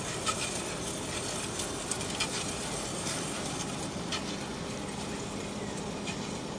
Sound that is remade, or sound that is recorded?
recorded